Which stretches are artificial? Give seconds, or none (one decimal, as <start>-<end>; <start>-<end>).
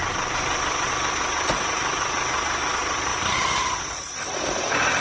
2.7-5.0